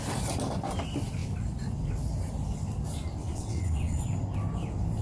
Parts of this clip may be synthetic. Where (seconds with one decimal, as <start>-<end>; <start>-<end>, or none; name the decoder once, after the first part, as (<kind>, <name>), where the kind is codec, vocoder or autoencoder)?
3.2-4.0 (vocoder, WaveNeXt)